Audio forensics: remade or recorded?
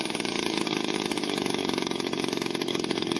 remade